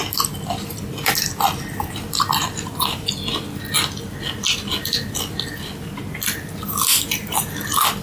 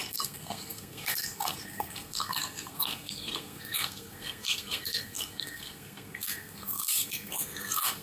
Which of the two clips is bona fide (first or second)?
first